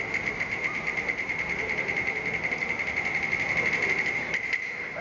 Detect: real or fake real